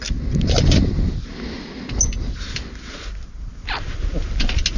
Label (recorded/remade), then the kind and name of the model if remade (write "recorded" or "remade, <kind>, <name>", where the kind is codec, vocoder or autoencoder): recorded